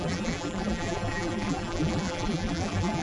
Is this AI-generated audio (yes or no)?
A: yes